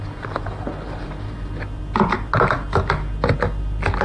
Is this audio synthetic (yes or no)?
no